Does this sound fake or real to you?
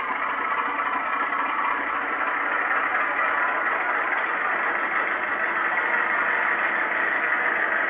real